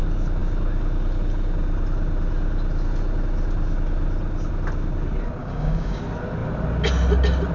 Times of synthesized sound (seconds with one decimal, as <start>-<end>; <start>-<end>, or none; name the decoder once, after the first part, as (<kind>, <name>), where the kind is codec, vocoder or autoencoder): 5.4-6.0 (codec, DAC)